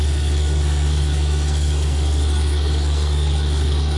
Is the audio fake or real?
fake